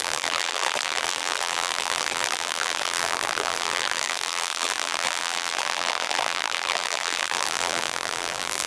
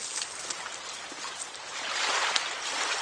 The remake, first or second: first